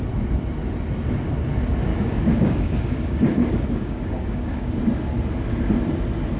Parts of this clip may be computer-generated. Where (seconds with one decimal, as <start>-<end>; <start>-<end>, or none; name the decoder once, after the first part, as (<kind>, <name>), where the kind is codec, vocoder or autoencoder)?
1.9-4.8 (codec, DAC)